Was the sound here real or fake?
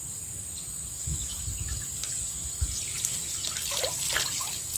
real